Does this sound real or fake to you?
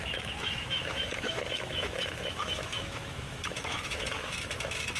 fake